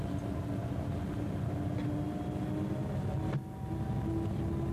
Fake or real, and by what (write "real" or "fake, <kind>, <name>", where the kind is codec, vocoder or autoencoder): real